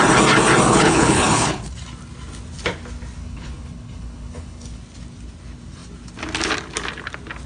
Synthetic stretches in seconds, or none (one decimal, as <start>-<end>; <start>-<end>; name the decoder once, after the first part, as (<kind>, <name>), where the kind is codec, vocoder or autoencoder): 0.7-1.6 (codec, HILCodec); 3.2-4.8